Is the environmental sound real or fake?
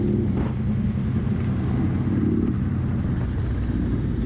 real